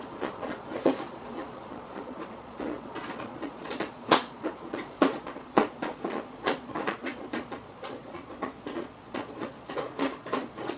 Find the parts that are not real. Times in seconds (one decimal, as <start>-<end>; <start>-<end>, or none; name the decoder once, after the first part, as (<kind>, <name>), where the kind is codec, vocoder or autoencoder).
0.0-10.8 (vocoder, Vocos)